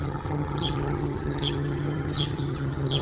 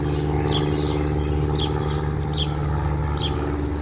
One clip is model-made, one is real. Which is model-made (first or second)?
first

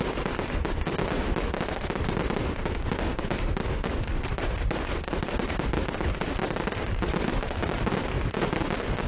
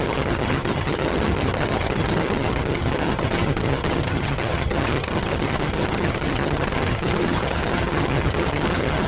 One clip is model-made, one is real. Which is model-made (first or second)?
second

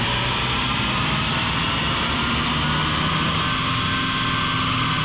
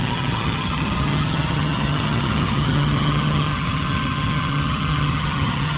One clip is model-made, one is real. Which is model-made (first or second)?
second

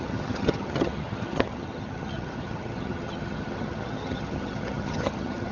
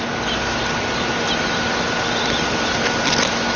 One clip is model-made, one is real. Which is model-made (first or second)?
first